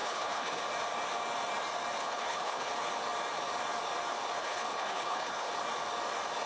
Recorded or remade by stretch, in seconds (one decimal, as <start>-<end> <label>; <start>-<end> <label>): 0.0-0.6 remade; 0.6-2.0 recorded; 2.0-2.7 remade; 2.7-4.4 recorded; 4.4-5.5 remade; 5.5-6.5 recorded